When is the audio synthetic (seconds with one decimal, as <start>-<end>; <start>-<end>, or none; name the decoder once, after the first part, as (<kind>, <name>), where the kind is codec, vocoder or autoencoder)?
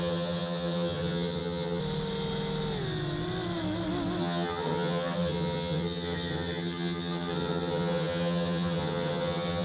0.0-1.8 (vocoder, HiFi-GAN); 4.2-9.6